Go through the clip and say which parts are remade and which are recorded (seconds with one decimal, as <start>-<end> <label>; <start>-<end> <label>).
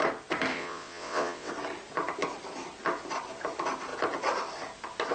0.0-0.5 recorded; 0.5-1.5 remade; 1.5-5.1 recorded